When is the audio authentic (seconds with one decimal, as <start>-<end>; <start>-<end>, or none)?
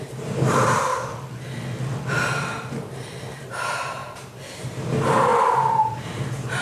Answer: 0.9-2.7; 4.0-4.6